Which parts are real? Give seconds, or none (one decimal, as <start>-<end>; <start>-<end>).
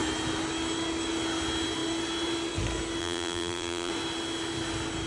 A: 0.0-3.0; 3.9-5.1